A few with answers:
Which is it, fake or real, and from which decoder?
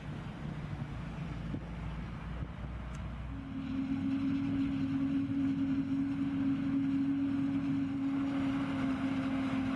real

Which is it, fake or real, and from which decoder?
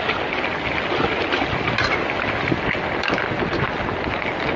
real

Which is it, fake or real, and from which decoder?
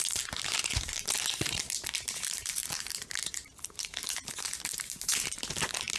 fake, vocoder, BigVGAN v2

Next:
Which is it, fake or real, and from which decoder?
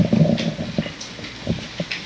real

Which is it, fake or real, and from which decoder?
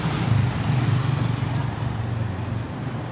real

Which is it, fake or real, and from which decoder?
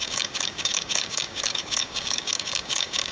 fake, codec, DAC